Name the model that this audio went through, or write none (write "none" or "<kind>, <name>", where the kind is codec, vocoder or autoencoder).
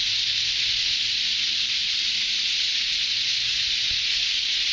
none